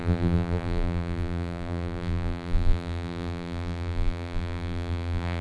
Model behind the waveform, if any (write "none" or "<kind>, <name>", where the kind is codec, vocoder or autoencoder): vocoder, BigVGAN v2